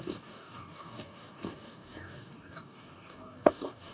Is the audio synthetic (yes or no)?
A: yes